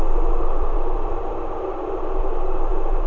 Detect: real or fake fake